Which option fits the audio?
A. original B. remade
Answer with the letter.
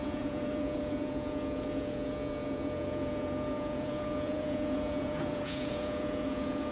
B